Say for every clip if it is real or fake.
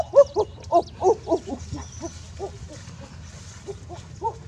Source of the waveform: real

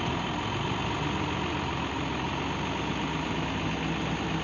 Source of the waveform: real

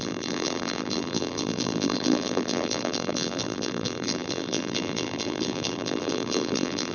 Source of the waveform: fake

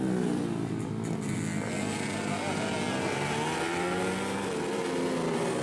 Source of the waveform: real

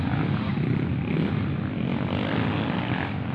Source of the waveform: real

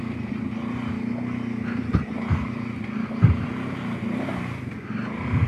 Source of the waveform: real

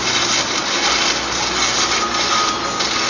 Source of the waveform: real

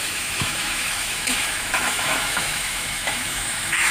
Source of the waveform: fake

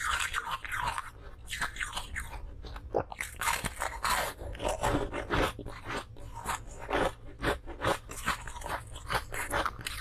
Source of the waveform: real